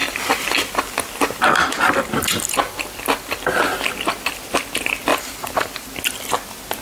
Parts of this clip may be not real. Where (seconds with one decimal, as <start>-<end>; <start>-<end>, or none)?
5.1-6.0